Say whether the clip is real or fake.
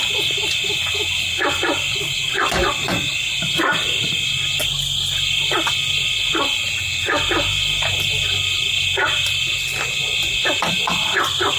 real